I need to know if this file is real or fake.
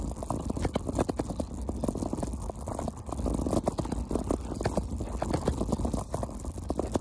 real